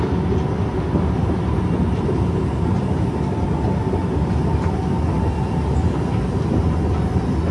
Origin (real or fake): real